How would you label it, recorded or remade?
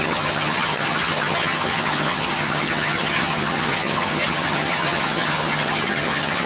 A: remade